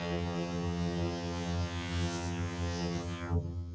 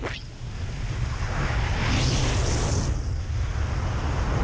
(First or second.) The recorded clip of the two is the second